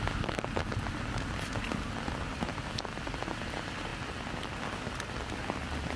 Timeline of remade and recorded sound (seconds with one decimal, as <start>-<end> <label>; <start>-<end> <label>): 0.0-6.0 recorded